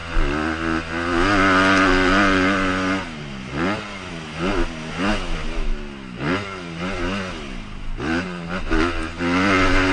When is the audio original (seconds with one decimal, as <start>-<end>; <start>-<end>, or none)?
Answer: 0.0-9.9